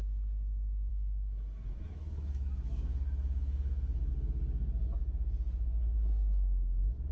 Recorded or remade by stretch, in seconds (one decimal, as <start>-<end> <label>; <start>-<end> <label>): 0.0-0.9 recorded; 0.9-4.1 remade; 4.1-7.1 recorded